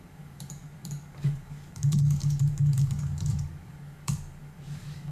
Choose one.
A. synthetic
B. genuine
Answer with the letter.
A